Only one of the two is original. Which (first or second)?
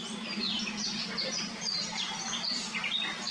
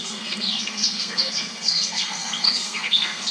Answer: first